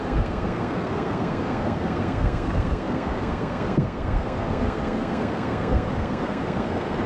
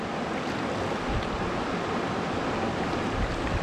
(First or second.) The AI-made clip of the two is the first